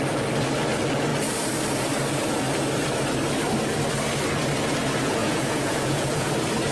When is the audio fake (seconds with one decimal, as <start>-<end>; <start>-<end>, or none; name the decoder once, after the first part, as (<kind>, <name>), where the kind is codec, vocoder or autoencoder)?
5.2-6.3 (vocoder, Vocos)